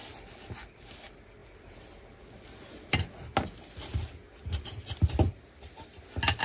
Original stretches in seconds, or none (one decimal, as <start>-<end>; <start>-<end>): 0.0-6.4